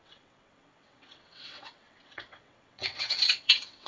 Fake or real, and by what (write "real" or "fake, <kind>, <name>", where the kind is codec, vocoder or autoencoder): fake, vocoder, WaveNeXt